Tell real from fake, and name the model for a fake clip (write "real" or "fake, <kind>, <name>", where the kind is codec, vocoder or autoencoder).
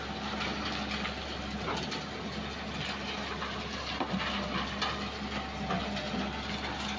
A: real